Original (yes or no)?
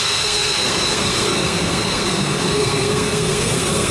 no